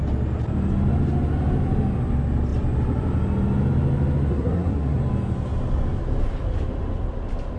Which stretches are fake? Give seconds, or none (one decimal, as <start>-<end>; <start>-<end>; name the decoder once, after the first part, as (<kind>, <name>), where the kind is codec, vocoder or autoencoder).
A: 4.3-5.0 (codec, SNAC)